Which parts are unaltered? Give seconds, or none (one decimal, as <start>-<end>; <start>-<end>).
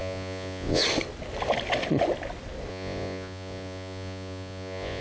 0.8-2.7